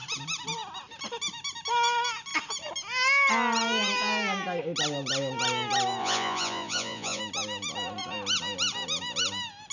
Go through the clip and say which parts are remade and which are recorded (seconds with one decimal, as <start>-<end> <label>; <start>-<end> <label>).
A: 0.0-6.0 recorded; 6.0-7.2 remade; 7.2-9.7 recorded